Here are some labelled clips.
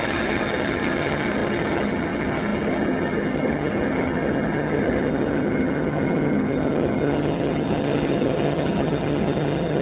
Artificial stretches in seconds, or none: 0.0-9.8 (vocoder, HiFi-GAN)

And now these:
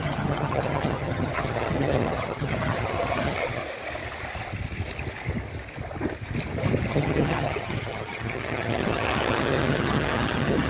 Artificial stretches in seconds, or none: 0.0-3.6 (vocoder, HiFi-GAN); 6.9-10.7

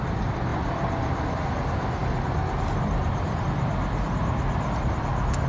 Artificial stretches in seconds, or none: none

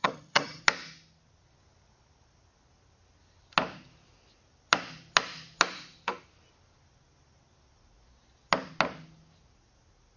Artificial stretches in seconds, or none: 0.0-0.6 (vocoder, HiFi-GAN)

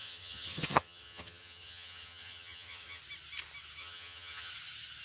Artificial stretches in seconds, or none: 0.0-3.0 (vocoder, HiFi-GAN); 3.8-4.5